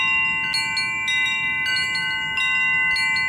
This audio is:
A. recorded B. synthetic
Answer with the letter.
A